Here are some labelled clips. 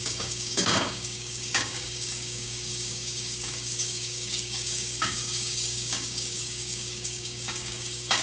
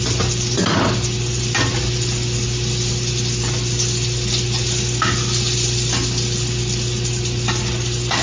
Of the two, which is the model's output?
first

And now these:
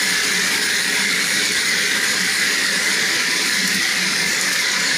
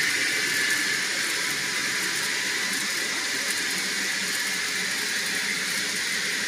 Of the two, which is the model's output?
first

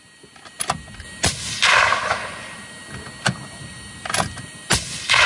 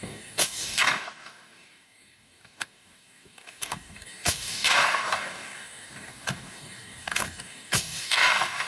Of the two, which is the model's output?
second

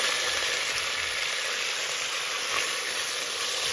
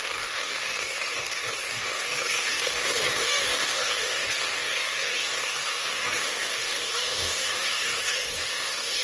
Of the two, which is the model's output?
second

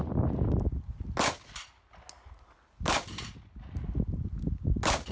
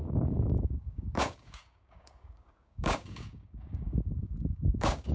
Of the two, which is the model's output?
second